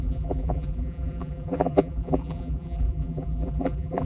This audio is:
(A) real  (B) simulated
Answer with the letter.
B